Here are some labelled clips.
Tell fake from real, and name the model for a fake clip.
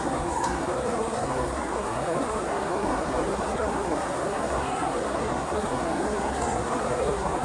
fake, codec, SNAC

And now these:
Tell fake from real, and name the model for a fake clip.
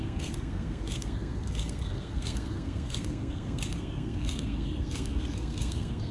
fake, codec, SNAC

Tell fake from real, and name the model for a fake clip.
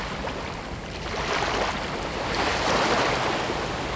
real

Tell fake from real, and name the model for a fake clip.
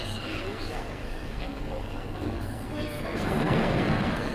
fake, codec, SNAC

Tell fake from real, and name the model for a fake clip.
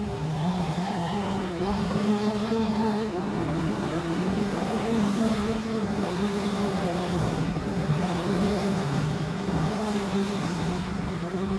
fake, codec, SNAC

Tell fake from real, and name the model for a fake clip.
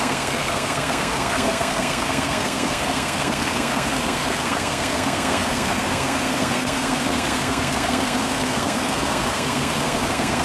fake, codec, SNAC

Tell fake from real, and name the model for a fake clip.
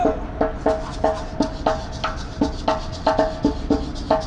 real